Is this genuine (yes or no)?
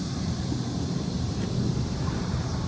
yes